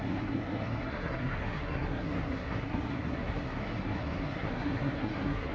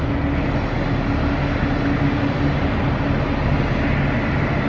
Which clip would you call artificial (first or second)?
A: first